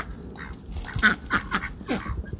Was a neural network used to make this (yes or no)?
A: no